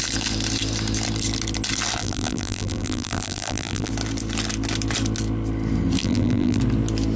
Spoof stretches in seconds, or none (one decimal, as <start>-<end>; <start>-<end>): 2.0-3.9; 6.0-6.6

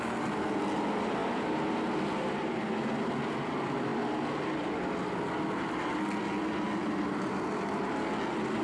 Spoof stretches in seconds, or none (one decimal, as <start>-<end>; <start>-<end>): 1.2-2.7; 6.8-7.6

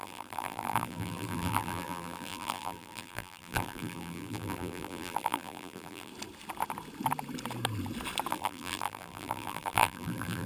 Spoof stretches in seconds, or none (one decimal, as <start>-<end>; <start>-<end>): 0.0-6.1; 8.3-10.5

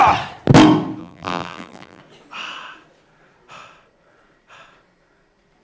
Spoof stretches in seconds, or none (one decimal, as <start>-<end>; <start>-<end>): 1.0-2.0